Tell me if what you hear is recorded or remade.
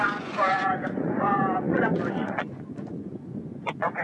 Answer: remade